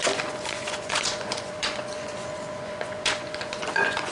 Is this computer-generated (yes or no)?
yes